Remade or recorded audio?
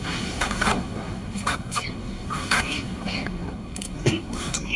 remade